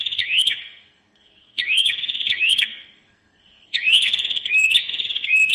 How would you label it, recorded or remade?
remade